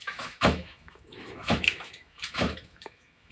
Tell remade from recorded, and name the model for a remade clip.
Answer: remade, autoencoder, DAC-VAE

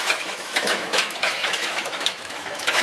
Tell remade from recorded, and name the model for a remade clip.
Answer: remade, autoencoder, DAC-VAE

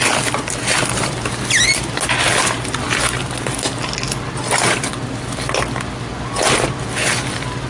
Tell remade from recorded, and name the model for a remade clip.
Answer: recorded